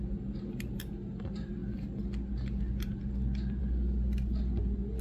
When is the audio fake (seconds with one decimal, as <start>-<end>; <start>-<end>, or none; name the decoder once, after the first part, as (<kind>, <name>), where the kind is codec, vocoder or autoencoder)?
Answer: none